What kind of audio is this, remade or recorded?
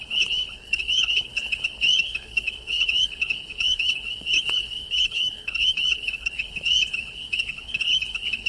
remade